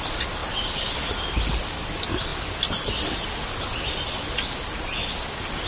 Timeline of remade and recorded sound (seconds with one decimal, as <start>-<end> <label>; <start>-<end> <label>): 0.0-5.7 recorded